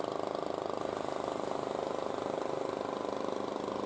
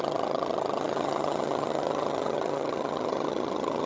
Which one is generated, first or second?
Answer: second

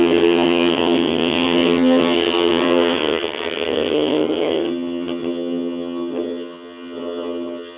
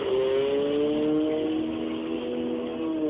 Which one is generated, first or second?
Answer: first